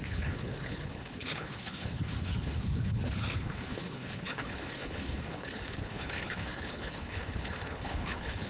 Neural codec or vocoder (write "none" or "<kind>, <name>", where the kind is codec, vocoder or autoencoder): codec, HILCodec